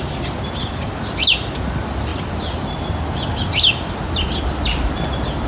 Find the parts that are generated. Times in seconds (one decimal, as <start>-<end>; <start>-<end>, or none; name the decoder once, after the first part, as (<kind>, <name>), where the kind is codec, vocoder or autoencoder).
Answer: none